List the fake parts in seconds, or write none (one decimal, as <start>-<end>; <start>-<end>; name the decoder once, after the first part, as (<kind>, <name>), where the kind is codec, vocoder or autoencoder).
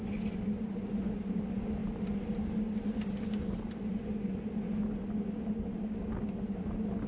none